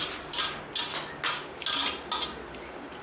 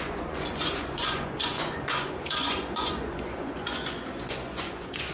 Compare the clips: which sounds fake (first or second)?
second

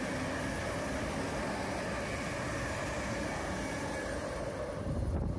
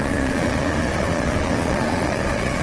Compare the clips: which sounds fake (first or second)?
second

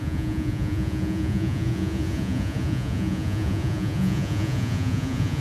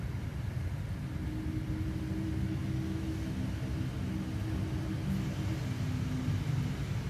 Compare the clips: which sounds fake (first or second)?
first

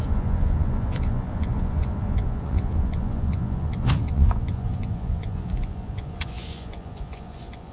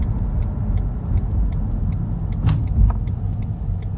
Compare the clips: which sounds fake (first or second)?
first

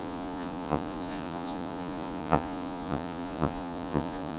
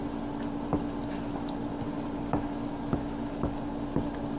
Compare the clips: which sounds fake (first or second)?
first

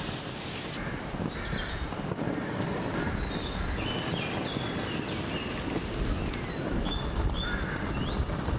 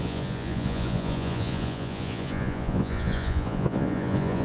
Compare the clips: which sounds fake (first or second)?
second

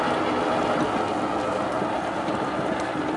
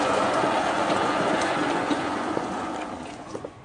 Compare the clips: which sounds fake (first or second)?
second